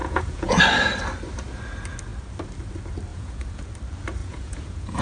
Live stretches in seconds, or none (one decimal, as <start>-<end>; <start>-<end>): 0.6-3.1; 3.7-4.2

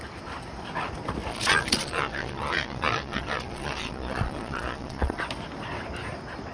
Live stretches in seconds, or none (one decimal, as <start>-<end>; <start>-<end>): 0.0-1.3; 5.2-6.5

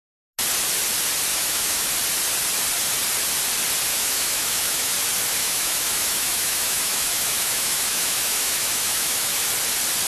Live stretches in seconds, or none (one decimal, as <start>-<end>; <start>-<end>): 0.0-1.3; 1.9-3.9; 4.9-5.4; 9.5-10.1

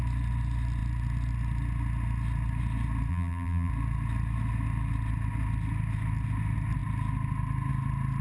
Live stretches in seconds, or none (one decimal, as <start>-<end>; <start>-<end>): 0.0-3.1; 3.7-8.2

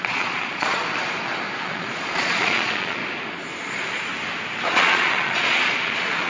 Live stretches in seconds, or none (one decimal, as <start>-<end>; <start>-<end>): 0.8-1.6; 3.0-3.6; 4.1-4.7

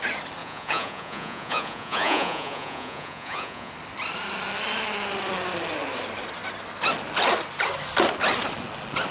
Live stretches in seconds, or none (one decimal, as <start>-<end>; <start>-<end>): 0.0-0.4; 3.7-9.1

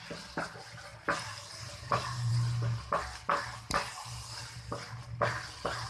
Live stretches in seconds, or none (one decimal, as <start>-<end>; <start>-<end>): 0.0-0.9; 2.3-3.3; 4.4-5.9

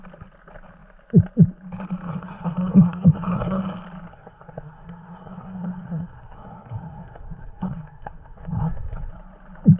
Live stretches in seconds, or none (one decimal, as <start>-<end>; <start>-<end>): 0.0-2.1; 3.6-4.1; 9.1-9.8